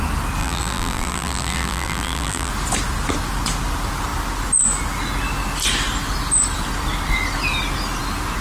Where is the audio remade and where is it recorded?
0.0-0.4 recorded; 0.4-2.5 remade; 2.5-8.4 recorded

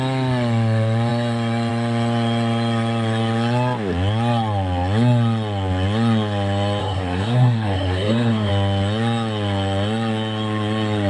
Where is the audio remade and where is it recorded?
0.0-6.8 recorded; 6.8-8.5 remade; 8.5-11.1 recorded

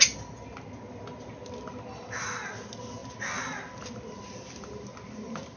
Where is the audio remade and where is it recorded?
0.0-5.6 recorded

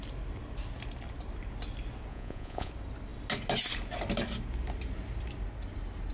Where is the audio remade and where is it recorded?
0.0-2.1 recorded; 2.1-2.7 remade; 2.7-6.1 recorded